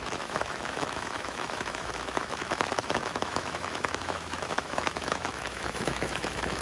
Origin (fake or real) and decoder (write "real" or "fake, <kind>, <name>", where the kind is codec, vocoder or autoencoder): fake, autoencoder, DAC-VAE